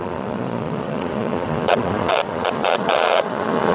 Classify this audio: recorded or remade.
remade